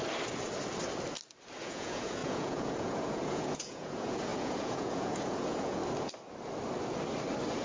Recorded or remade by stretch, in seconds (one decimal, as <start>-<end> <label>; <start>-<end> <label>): 0.0-1.6 recorded; 1.6-5.8 remade; 5.8-7.6 recorded